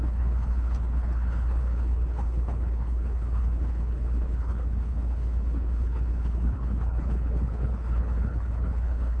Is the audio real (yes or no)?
no